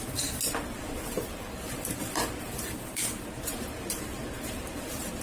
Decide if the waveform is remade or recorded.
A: remade